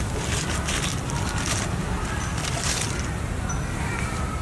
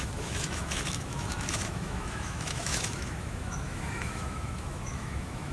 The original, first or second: first